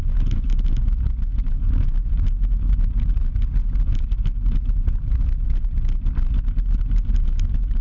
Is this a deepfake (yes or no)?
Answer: no